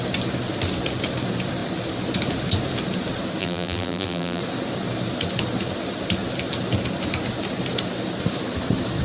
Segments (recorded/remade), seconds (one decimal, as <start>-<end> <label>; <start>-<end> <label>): 0.0-3.4 recorded; 3.4-4.4 remade; 4.4-9.0 recorded